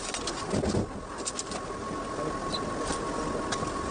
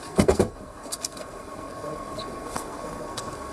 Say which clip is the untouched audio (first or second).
first